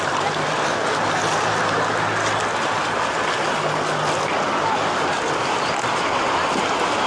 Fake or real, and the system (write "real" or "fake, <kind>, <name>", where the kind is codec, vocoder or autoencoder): real